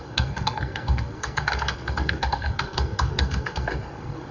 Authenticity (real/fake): fake